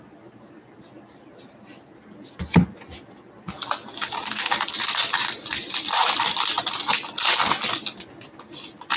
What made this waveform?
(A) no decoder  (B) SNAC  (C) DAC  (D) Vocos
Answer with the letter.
A